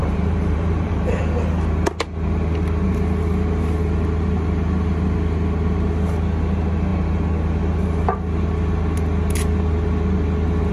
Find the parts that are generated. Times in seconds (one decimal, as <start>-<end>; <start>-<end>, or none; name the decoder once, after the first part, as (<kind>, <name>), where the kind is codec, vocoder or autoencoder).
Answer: 0.0-1.2 (vocoder, BigVGAN v2)